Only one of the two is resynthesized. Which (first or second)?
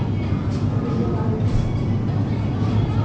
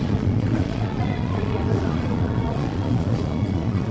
second